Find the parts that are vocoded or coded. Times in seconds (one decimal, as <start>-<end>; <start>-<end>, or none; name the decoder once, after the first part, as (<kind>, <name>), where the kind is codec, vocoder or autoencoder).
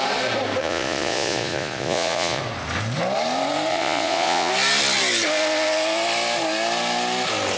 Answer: 0.6-2.4 (vocoder, Vocos); 3.7-4.5